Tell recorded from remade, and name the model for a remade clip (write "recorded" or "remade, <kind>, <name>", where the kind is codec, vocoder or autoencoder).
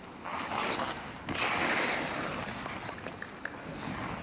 recorded